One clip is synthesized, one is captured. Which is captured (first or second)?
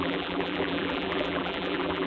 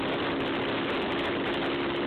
second